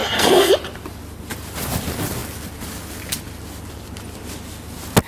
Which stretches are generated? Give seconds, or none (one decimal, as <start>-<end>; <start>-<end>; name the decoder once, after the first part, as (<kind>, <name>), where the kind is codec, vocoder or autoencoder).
0.0-0.5 (codec, SNAC)